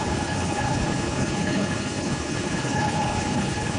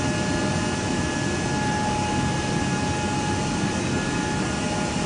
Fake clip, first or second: first